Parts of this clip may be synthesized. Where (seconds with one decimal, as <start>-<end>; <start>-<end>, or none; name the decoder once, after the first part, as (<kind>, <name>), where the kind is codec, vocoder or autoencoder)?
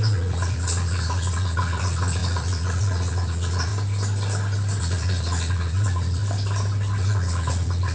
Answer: 0.0-3.7 (vocoder, Vocos); 4.8-6.2; 7.0-7.9